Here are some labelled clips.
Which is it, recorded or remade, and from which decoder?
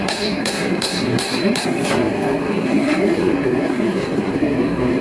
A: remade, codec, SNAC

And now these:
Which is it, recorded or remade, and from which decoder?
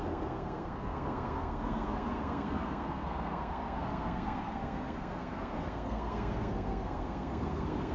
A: remade, codec, SNAC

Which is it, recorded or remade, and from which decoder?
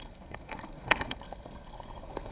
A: remade, codec, SNAC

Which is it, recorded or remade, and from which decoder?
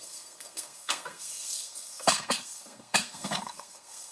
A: remade, codec, SNAC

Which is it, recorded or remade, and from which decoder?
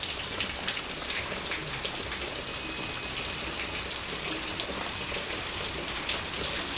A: recorded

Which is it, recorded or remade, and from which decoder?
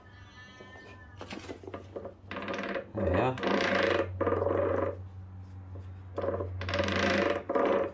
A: recorded